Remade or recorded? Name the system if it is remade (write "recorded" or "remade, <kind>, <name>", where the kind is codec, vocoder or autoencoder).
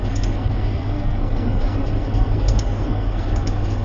remade, codec, SNAC